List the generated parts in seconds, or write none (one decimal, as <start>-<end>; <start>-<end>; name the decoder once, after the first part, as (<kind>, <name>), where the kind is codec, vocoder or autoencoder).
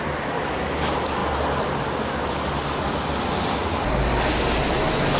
none